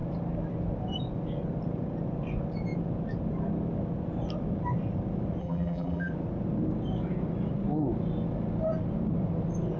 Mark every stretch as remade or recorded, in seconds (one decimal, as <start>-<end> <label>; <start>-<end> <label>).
0.0-5.4 recorded; 5.4-6.1 remade; 6.1-9.8 recorded